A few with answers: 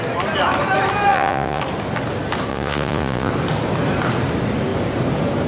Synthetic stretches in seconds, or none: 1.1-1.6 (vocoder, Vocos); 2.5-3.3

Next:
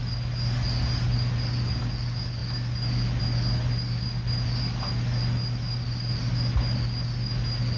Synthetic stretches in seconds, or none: none

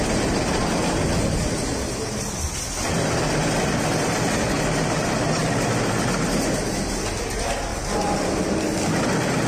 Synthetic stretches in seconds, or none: 7.7-9.0 (vocoder, BigVGAN v2)

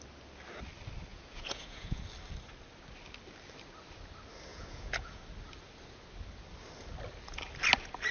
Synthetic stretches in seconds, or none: 1.1-2.0 (vocoder, Vocos); 4.5-5.2

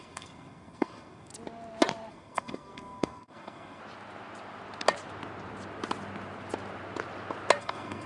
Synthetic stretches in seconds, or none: 0.0-1.3 (codec, SNAC); 2.1-3.8; 7.6-8.1

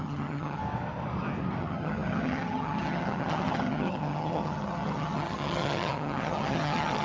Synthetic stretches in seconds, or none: 0.0-0.6 (vocoder, HiFi-GAN); 1.6-7.0